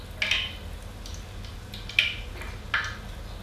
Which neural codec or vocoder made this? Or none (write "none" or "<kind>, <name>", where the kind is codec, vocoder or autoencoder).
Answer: none